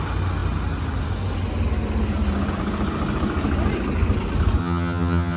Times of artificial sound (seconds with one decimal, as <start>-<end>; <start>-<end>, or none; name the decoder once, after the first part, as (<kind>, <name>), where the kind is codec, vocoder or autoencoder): 4.6-5.4 (vocoder, HiFi-GAN)